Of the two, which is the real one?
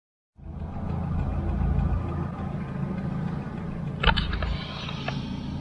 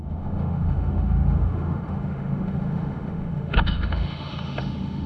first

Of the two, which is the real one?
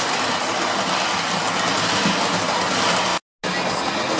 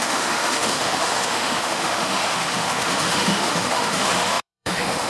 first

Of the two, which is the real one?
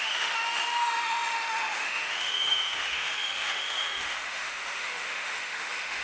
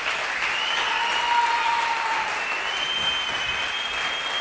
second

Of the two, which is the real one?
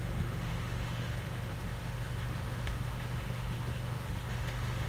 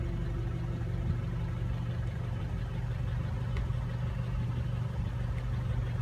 second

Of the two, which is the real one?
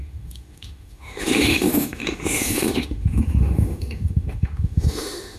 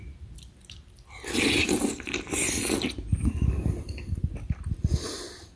second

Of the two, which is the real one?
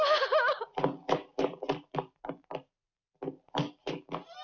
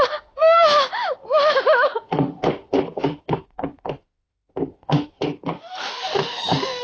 first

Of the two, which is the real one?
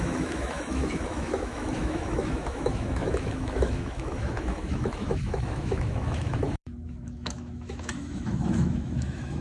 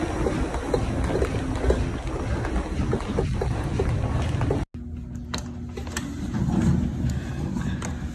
second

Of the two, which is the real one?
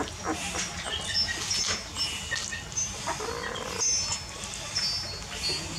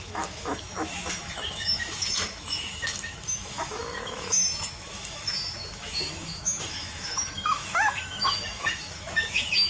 first